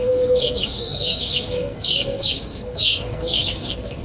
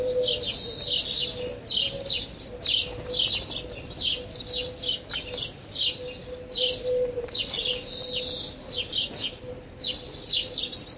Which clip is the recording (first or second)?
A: second